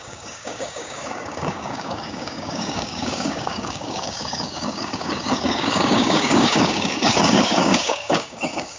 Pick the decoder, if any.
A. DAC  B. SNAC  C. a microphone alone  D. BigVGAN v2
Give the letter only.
A